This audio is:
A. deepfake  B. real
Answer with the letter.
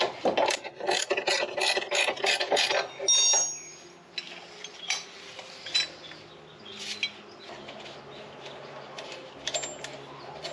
B